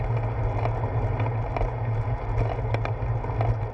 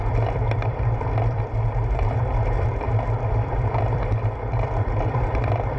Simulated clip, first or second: second